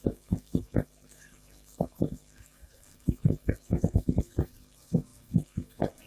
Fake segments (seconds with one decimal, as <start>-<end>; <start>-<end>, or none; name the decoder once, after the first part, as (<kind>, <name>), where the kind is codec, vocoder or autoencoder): 0.0-6.1 (codec, SNAC)